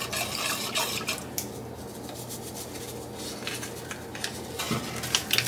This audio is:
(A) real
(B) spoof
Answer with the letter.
A